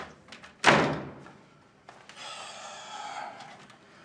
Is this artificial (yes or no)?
no